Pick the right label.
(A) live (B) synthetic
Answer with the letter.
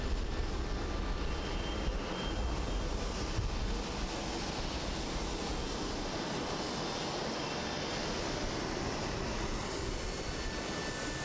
A